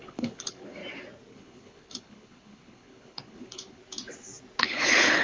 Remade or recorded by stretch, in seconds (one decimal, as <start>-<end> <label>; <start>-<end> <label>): 0.0-0.8 remade; 0.8-1.3 recorded; 1.3-3.8 remade; 3.8-4.6 recorded; 4.6-5.2 remade